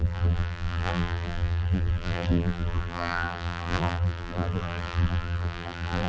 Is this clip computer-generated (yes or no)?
yes